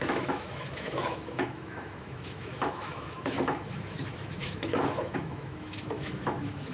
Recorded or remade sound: remade